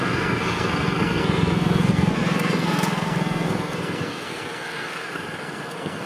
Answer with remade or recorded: remade